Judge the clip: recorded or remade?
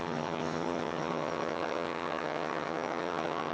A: remade